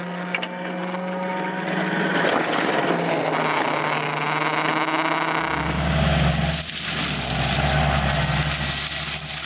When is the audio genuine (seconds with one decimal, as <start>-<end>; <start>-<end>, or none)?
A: 0.0-9.5